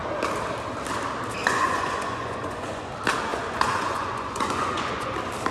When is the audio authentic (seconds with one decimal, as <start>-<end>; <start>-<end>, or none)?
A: 0.0-1.4; 2.9-3.3; 5.1-5.5